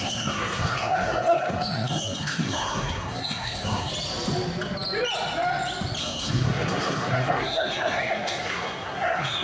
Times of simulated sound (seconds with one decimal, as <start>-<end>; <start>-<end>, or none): 0.0-3.9; 6.0-9.4